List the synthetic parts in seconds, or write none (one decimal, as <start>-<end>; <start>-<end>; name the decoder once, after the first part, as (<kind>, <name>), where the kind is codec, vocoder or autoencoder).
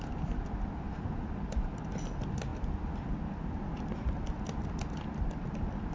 none